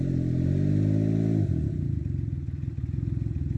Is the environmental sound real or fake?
real